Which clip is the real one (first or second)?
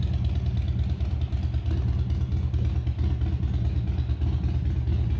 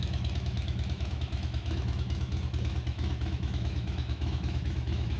first